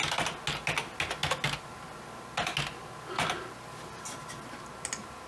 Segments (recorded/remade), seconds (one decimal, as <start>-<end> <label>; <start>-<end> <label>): 0.0-5.3 recorded